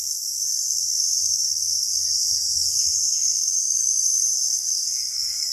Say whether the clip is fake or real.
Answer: fake